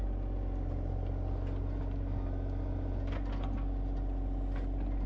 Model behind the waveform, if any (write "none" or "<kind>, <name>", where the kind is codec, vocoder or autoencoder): none